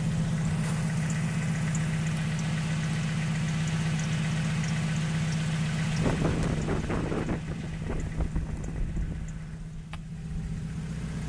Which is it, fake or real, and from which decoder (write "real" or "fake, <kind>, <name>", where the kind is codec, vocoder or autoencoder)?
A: real